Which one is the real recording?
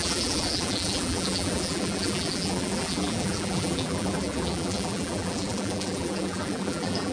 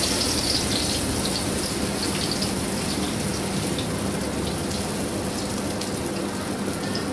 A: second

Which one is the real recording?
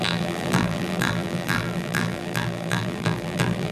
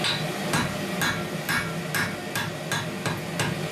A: second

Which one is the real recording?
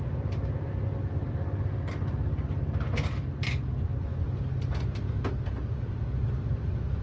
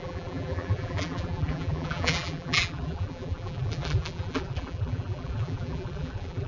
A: first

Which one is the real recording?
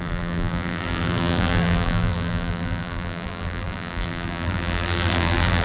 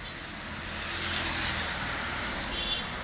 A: second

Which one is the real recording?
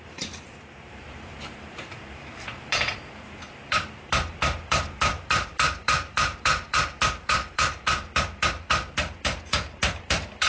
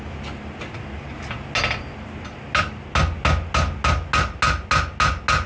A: second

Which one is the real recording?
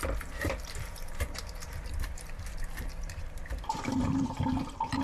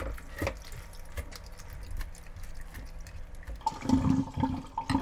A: second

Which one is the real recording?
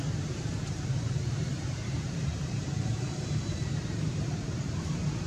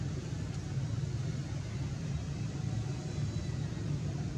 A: second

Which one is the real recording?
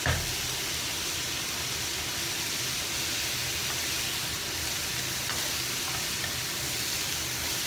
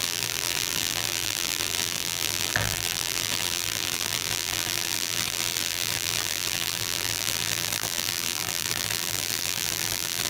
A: first